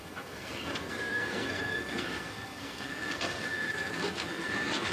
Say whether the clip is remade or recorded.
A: remade